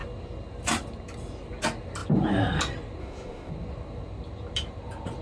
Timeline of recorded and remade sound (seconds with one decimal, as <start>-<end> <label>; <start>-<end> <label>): 0.0-3.0 recorded; 3.0-3.5 remade; 3.5-5.2 recorded